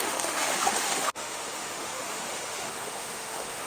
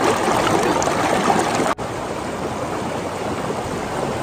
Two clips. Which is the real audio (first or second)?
second